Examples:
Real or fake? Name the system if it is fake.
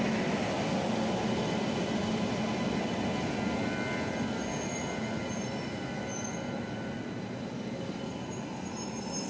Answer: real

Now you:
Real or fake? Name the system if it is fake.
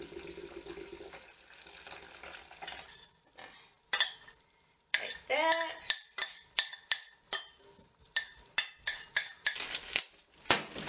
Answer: real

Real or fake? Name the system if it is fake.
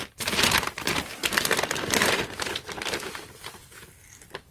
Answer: real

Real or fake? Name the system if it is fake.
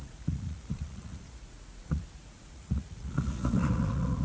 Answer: fake, vocoder, Vocos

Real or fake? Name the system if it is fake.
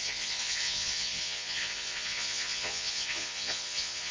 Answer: fake, vocoder, Vocos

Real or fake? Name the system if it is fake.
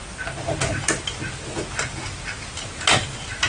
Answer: real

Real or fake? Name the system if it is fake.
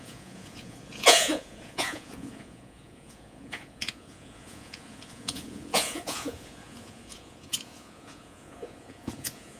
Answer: fake, vocoder, Vocos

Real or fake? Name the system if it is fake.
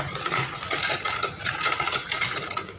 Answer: fake, vocoder, Vocos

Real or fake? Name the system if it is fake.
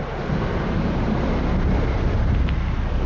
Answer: real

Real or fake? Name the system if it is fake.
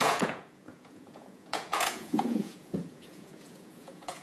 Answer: fake, vocoder, Vocos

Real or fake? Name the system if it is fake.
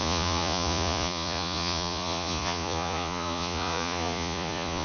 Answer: fake, vocoder, Vocos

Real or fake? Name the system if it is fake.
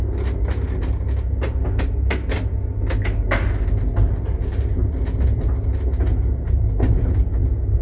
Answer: real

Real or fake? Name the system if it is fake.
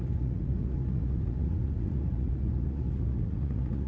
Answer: fake, vocoder, Vocos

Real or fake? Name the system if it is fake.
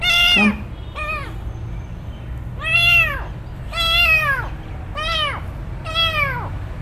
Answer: real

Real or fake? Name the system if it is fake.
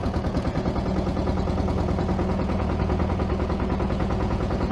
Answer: fake, vocoder, Vocos